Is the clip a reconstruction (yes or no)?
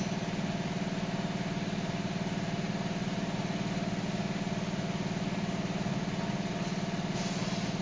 no